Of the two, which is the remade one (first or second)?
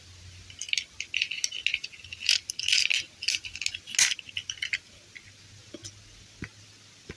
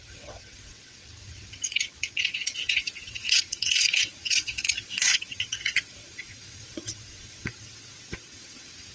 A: second